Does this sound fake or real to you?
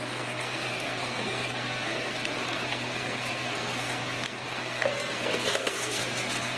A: fake